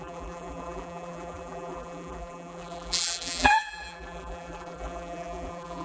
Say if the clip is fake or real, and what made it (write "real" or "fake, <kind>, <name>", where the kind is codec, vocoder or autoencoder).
fake, vocoder, BigVGAN v2